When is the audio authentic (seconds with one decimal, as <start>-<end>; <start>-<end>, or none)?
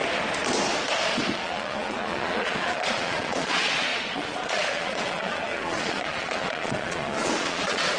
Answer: 0.0-1.0